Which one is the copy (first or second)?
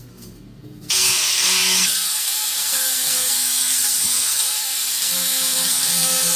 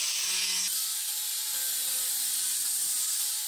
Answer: first